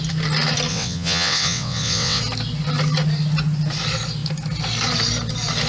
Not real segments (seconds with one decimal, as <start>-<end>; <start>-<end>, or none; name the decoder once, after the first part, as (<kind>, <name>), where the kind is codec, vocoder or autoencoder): 0.7-2.2 (vocoder, WaveNeXt)